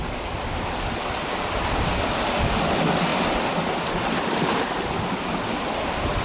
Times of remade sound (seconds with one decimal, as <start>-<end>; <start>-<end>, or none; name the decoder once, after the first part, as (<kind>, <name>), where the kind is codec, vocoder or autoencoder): none